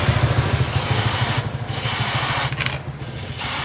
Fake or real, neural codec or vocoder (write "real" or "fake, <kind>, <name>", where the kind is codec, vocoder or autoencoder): real